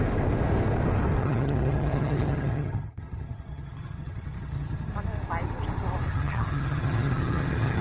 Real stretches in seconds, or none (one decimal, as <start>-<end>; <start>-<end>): 0.0-1.2; 4.9-6.1